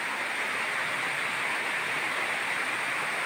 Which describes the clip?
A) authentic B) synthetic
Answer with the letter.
A